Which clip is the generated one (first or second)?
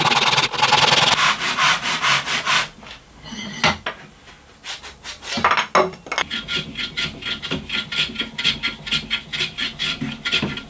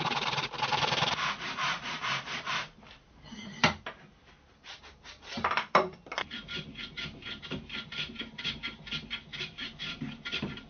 second